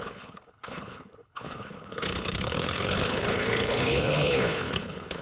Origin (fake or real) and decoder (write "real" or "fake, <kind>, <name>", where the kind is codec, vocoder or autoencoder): fake, codec, HILCodec